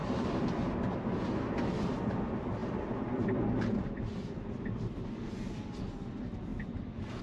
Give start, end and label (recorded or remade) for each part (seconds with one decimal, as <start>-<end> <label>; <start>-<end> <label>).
0.0-7.2 recorded

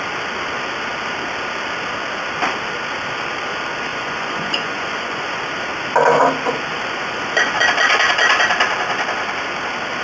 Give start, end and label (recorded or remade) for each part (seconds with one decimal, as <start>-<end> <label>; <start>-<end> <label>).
0.0-3.9 recorded; 3.9-5.4 remade; 5.4-6.7 recorded; 6.7-7.6 remade; 7.6-10.0 recorded